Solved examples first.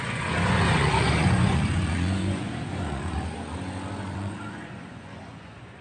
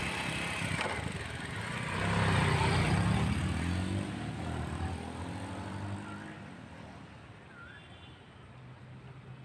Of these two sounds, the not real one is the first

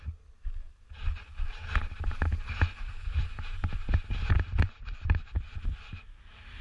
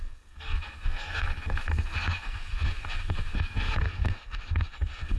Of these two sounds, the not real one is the second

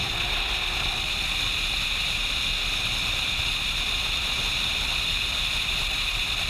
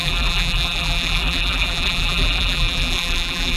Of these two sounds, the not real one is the second